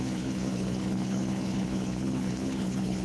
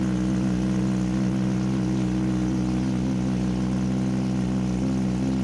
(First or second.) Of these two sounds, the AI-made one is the first